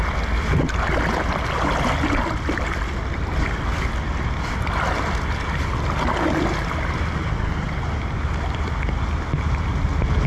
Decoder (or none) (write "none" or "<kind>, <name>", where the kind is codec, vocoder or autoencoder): none